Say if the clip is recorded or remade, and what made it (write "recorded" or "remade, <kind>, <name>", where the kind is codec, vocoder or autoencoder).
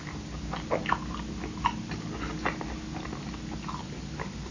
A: recorded